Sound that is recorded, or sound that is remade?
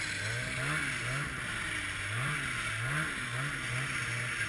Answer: recorded